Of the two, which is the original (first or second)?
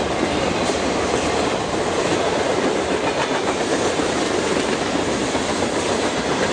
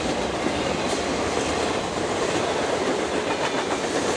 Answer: second